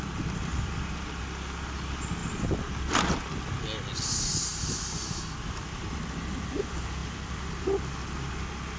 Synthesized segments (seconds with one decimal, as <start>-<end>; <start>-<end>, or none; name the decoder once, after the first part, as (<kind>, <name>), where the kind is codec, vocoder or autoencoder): 7.0-7.8 (vocoder, BigVGAN v2)